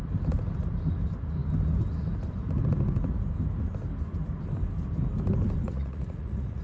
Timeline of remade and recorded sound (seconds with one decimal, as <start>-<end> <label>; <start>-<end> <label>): 0.0-5.6 recorded; 5.6-6.6 remade